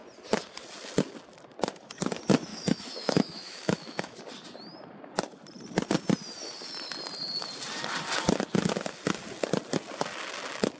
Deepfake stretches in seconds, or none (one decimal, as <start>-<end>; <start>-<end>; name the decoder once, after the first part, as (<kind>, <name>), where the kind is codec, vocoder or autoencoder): 2.5-4.2 (autoencoder, DAC-VAE)